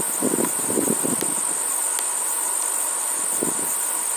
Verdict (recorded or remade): recorded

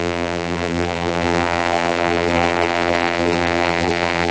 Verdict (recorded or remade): remade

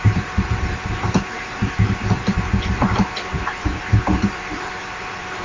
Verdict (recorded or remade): remade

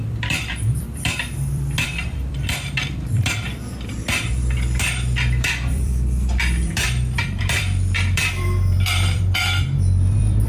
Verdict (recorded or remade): remade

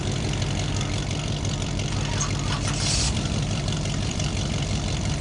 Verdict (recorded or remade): remade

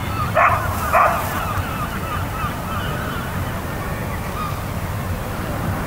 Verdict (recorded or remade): recorded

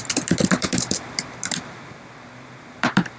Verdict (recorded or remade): remade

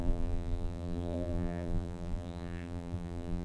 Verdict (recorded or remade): remade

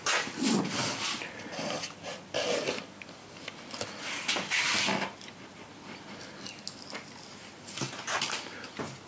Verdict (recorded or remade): recorded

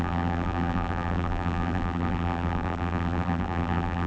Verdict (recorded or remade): remade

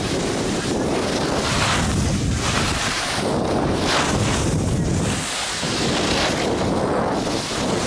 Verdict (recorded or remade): recorded